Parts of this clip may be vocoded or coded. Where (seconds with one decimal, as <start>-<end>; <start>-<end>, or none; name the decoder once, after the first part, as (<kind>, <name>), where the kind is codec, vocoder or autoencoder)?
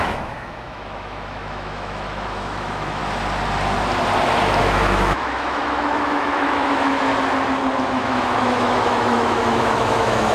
0.0-3.0 (autoencoder, DAC-VAE); 4.6-7.1; 7.8-10.3